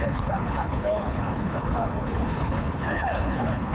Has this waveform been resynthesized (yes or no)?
yes